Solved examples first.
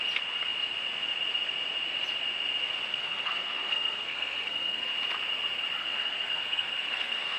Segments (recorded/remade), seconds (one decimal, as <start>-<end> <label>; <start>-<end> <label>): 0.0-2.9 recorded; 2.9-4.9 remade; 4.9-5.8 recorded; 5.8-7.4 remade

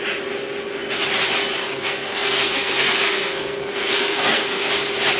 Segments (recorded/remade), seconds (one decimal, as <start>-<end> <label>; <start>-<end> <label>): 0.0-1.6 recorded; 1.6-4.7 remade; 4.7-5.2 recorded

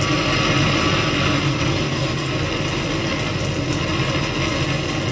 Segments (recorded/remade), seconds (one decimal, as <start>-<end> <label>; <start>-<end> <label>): 0.0-1.5 recorded; 1.5-2.3 remade; 2.3-5.1 recorded